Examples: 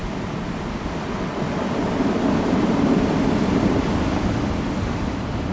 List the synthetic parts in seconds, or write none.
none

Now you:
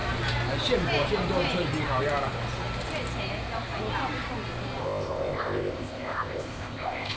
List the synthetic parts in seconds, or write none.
4.8-7.2 (codec, ZipCodec)

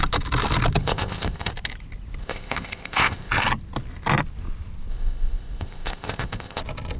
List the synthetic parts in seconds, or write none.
0.8-1.5 (codec, ZipCodec); 2.2-3.3; 4.9-6.6